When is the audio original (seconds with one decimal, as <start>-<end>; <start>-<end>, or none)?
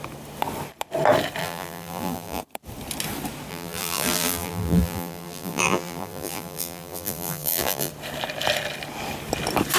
0.0-1.4; 2.4-3.5; 7.9-9.8